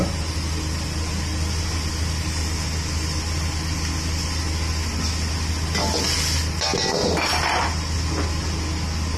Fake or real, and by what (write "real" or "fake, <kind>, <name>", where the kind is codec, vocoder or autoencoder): real